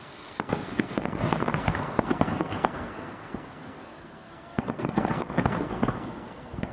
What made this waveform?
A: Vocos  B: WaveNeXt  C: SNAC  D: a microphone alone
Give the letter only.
C